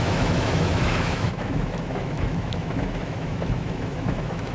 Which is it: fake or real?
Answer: fake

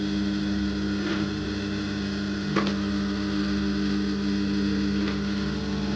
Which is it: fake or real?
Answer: real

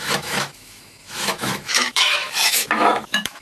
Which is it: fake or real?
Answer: fake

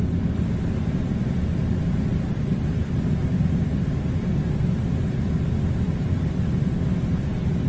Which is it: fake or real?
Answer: real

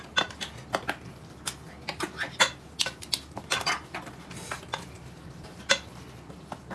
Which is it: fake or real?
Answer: real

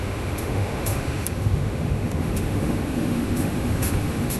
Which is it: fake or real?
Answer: fake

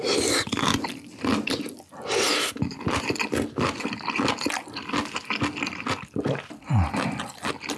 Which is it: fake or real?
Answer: real